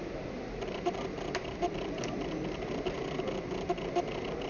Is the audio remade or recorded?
recorded